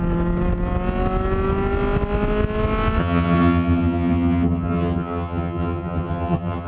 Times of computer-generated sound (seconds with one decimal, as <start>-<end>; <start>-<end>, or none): 3.0-6.7